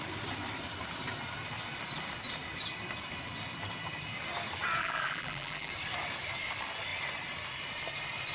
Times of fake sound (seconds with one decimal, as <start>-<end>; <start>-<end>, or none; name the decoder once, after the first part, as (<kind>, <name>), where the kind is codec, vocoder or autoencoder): 4.8-5.7 (vocoder, BigVGAN v2)